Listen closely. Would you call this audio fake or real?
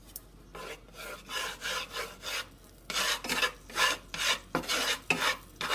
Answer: real